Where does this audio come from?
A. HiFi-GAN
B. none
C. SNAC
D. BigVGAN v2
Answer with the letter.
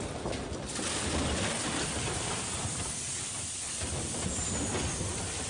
B